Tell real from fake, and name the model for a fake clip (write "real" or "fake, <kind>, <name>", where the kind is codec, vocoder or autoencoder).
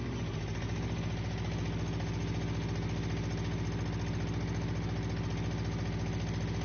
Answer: real